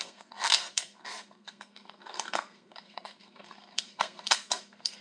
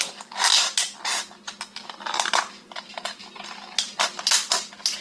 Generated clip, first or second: first